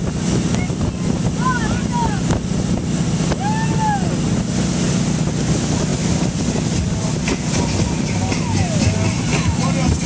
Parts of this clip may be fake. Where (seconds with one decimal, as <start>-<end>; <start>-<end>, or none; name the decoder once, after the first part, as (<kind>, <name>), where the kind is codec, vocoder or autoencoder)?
none